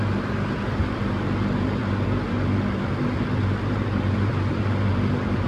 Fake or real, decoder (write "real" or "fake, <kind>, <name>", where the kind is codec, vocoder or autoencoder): fake, vocoder, BigVGAN v2